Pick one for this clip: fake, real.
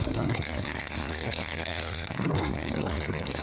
fake